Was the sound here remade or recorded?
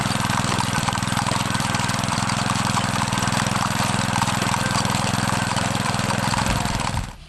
remade